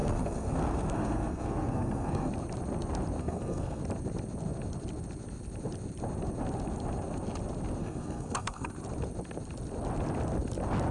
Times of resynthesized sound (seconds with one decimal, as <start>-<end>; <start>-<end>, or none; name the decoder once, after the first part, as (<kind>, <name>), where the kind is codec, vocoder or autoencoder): 0.0-2.3 (codec, SNAC); 3.2-3.8; 7.8-8.7

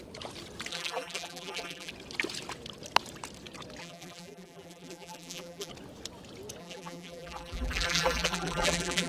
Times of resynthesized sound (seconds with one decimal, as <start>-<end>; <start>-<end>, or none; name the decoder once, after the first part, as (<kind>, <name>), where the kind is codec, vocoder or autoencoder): 0.7-1.9 (vocoder, BigVGAN v2); 3.8-5.7; 6.6-9.1

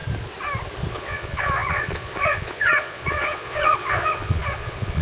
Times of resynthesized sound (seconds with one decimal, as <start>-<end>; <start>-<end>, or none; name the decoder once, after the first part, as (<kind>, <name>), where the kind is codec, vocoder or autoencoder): 0.9-5.0 (vocoder, Vocos)

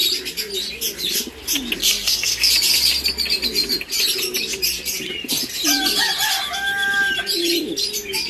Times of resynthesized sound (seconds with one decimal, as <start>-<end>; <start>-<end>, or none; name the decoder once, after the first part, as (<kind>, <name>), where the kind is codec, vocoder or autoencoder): 1.8-2.5 (codec, SNAC)

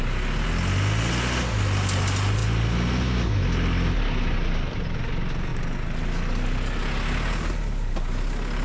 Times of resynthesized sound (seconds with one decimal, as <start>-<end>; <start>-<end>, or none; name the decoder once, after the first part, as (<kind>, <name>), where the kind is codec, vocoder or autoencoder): none